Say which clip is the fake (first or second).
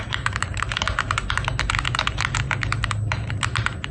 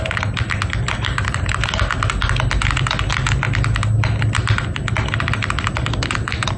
first